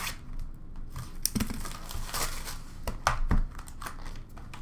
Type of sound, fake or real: real